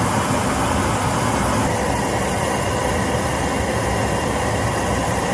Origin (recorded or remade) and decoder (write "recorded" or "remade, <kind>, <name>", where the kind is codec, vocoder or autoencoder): recorded